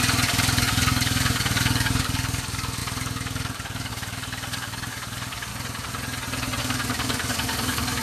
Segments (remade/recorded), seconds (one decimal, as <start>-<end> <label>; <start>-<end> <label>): 0.0-5.5 remade; 5.5-6.6 recorded; 6.6-8.0 remade